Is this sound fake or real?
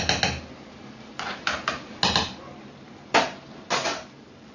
real